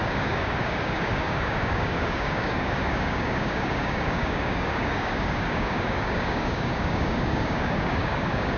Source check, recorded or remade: remade